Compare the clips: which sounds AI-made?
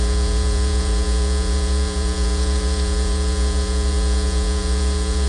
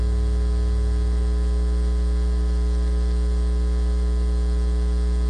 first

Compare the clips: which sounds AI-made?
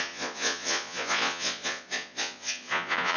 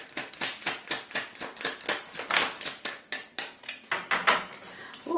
first